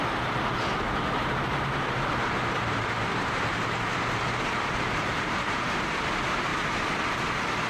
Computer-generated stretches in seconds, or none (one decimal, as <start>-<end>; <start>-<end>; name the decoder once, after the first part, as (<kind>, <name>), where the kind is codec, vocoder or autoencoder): 1.2-5.8 (vocoder, BigVGAN v2)